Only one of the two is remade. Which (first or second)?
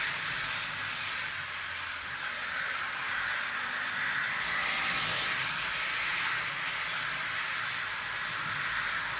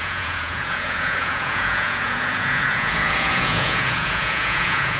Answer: second